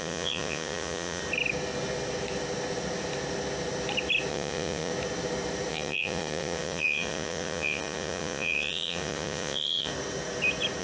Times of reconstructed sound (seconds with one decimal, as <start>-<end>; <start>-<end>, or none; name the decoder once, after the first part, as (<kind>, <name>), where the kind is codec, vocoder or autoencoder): 0.0-1.2 (vocoder, Vocos); 4.3-4.9; 5.7-9.9